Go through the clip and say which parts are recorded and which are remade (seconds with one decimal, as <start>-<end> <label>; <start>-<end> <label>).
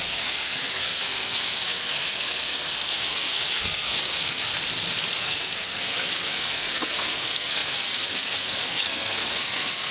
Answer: 0.0-4.5 remade; 4.5-5.2 recorded; 5.2-9.9 remade